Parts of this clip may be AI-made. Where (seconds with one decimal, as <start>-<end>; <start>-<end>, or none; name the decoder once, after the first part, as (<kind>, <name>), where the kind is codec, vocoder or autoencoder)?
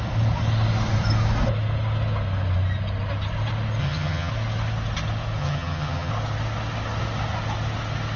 3.8-4.3 (vocoder, HiFi-GAN); 5.4-6.1